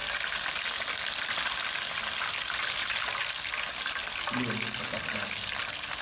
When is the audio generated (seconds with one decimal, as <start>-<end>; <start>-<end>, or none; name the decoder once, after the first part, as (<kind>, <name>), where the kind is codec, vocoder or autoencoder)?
none